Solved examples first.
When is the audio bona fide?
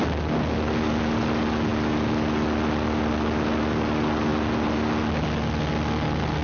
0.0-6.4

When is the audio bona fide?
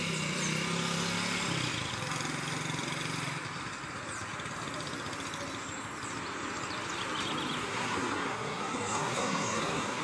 0.0-7.6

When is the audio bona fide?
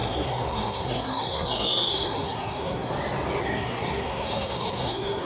2.9-3.4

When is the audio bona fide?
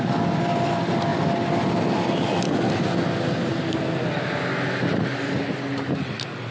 0.0-6.5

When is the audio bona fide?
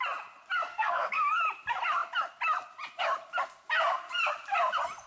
0.0-0.7; 1.3-5.1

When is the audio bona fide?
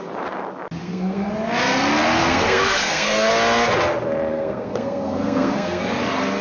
0.0-0.8; 1.3-2.2; 3.3-4.3; 5.8-6.4